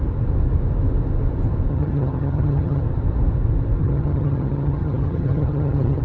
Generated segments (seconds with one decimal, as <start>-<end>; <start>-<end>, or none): 1.7-2.8; 3.8-6.0